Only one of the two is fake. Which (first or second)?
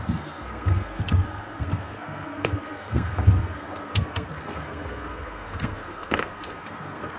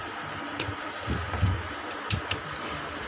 first